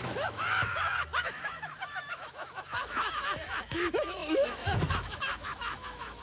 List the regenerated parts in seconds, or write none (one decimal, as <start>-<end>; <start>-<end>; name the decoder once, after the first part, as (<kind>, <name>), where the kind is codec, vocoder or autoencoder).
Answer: 0.0-6.2 (autoencoder, DAC-VAE)